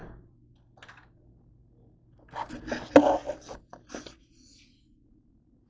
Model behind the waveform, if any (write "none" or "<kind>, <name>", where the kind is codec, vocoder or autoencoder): none